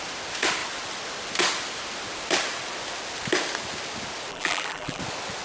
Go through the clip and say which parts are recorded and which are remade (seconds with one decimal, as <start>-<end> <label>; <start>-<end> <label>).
0.0-4.3 recorded; 4.3-5.0 remade; 5.0-5.4 recorded